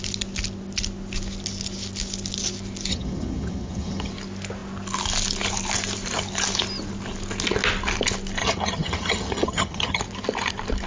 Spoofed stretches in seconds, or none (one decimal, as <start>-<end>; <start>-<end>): 2.9-4.1; 8.4-10.0